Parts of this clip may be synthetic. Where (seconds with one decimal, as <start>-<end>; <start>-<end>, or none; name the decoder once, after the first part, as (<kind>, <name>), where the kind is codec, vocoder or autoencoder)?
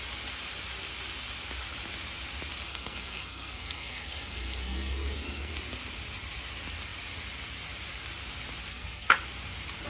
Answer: 2.7-5.5 (codec, SNAC); 8.7-9.2